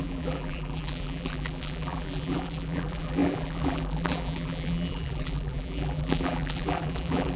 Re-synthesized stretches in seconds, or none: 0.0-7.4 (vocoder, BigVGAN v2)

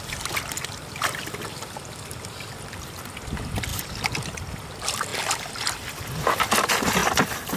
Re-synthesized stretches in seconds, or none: 0.0-3.7 (vocoder, BigVGAN v2); 4.5-5.1; 5.6-7.0

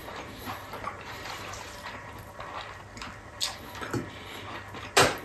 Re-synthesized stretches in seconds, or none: 0.0-2.3 (vocoder, BigVGAN v2)